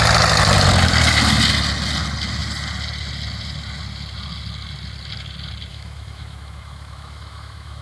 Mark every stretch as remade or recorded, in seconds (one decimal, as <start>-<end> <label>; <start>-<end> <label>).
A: 0.0-5.7 recorded; 5.7-7.8 remade